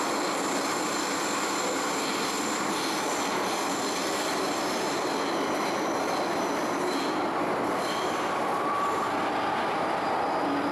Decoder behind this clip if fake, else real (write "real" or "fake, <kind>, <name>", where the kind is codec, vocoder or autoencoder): real